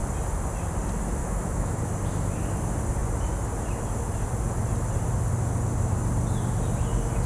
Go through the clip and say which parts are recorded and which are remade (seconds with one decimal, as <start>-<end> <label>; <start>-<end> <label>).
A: 0.0-1.2 recorded; 1.2-1.8 remade; 1.8-7.3 recorded